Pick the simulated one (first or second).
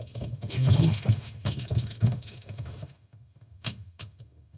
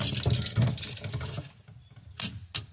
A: first